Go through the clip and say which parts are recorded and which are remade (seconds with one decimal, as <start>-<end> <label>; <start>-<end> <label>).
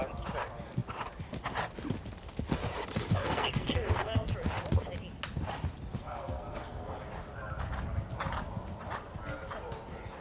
0.0-3.2 recorded; 3.2-4.3 remade; 4.3-6.0 recorded; 6.0-7.0 remade; 7.0-10.2 recorded